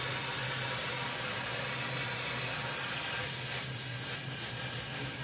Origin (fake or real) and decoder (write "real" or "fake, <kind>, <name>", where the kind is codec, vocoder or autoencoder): real